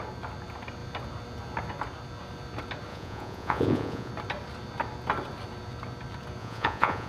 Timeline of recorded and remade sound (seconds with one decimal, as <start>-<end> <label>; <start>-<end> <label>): 0.0-2.9 recorded; 2.9-4.1 remade; 4.1-6.4 recorded; 6.4-7.1 remade